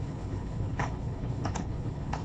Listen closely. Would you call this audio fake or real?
fake